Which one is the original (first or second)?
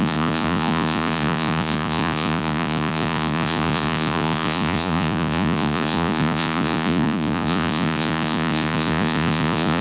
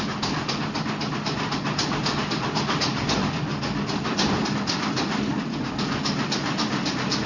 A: second